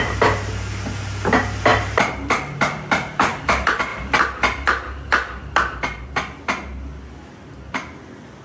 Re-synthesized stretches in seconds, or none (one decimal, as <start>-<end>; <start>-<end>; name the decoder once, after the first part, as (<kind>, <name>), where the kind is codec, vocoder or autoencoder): 1.7-3.4 (vocoder, BigVGAN v2)